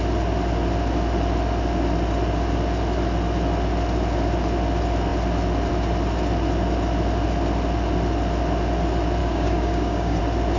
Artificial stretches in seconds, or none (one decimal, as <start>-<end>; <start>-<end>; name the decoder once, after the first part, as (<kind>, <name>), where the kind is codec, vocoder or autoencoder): 9.2-10.2 (codec, DAC)